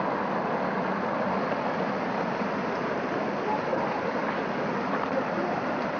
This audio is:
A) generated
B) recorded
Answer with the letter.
B